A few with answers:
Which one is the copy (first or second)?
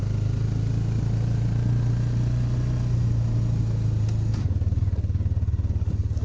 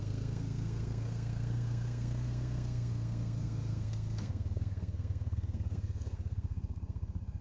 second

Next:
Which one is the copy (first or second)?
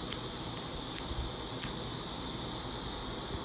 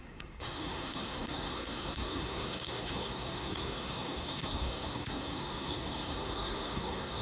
second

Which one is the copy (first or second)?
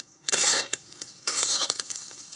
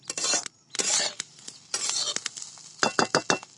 first